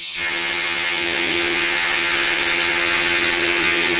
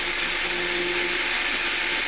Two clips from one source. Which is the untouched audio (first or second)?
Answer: second